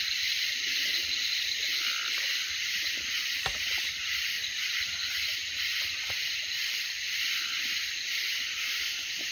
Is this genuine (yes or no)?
yes